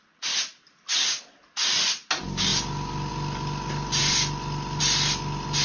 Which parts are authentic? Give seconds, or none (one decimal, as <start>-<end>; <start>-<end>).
0.0-5.6